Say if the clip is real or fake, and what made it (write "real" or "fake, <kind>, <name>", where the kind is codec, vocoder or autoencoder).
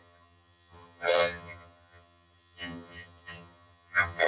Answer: fake, vocoder, HiFi-GAN